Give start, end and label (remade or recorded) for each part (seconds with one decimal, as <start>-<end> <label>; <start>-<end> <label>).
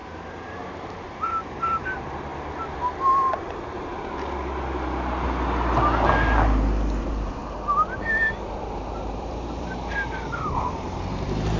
0.0-2.3 remade; 2.3-7.0 recorded; 7.0-11.6 remade